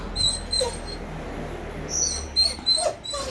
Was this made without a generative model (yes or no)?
yes